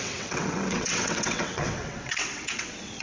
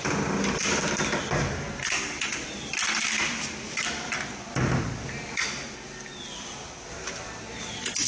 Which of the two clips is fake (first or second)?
first